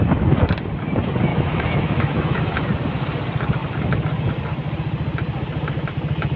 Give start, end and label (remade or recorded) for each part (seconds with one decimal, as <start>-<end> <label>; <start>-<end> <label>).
0.0-1.3 recorded; 1.3-2.4 remade; 2.4-6.4 recorded